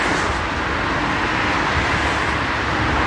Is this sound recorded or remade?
recorded